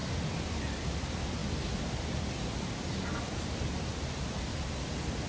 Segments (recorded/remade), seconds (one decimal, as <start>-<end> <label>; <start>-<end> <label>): 0.0-5.3 recorded